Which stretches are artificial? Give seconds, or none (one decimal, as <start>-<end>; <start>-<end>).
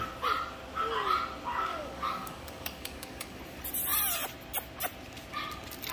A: 1.7-3.4